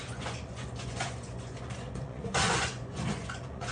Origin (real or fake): fake